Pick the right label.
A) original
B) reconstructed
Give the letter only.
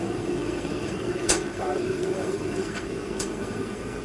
B